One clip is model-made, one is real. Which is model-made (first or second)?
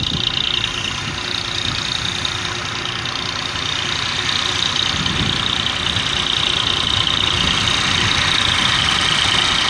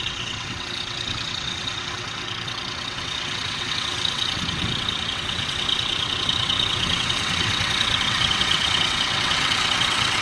second